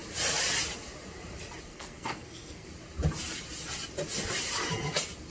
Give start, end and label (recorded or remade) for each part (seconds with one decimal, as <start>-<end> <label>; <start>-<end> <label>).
0.0-1.7 recorded; 1.7-2.7 remade; 2.7-5.3 recorded